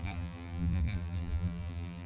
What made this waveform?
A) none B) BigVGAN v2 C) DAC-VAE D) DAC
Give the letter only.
B